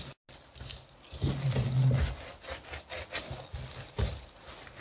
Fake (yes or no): no